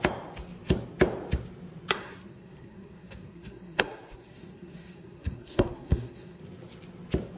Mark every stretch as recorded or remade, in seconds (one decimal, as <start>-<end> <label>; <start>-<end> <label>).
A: 0.0-2.0 recorded; 2.0-6.4 remade; 6.4-7.4 recorded